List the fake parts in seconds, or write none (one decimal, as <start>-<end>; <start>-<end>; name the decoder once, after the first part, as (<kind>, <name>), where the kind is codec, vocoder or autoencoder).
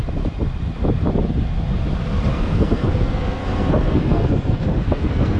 2.3-5.4 (codec, SNAC)